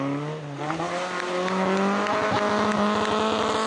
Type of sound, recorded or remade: recorded